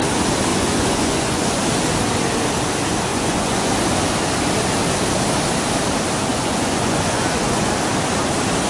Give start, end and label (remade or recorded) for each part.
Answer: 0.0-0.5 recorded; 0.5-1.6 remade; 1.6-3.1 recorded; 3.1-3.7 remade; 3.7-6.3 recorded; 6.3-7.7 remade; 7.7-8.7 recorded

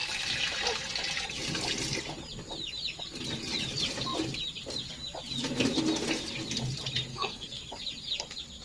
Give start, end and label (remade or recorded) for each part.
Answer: 0.0-7.1 recorded; 7.1-7.6 remade; 7.6-8.6 recorded

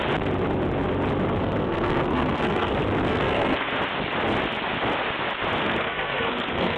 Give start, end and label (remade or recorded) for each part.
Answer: 0.0-1.4 recorded; 1.4-2.7 remade; 2.7-3.1 recorded; 3.1-3.7 remade; 3.7-5.6 recorded; 5.6-6.8 remade